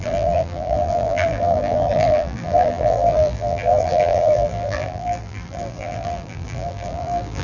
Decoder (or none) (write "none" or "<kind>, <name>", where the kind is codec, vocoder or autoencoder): vocoder, BigVGAN v2